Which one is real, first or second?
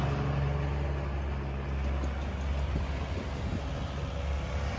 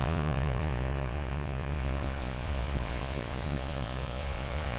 first